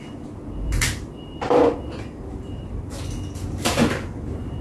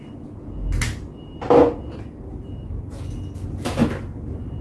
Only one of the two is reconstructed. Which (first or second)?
first